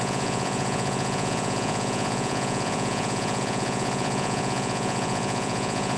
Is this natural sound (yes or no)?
no